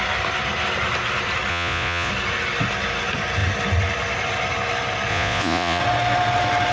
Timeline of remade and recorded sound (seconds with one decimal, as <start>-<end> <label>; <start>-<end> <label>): 0.0-1.5 recorded; 1.5-2.1 remade; 2.1-5.1 recorded; 5.1-5.8 remade; 5.8-6.7 recorded